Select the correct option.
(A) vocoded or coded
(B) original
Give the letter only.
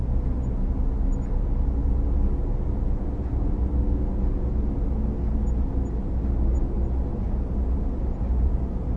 B